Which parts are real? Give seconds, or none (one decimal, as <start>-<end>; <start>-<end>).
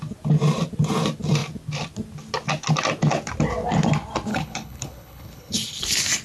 0.0-4.3; 5.8-6.2